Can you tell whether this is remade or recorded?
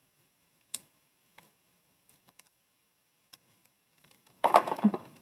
remade